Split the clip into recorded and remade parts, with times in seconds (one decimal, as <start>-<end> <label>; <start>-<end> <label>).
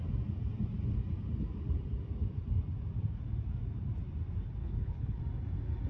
0.0-4.6 recorded; 4.6-5.2 remade; 5.2-5.9 recorded